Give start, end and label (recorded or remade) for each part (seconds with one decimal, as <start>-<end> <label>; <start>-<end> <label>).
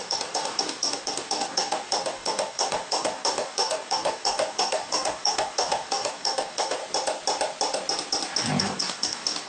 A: 0.0-6.8 remade; 6.8-8.6 recorded; 8.6-9.5 remade